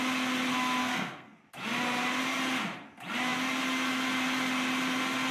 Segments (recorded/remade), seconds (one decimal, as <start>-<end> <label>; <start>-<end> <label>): 0.0-0.8 recorded; 0.8-1.4 remade; 1.4-5.3 recorded